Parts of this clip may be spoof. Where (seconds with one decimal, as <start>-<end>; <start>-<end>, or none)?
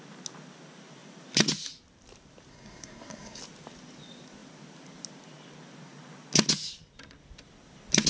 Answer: 2.5-3.4